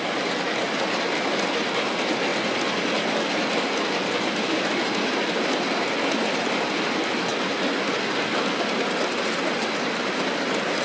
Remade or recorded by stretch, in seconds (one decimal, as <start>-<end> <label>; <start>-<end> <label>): 0.0-10.8 recorded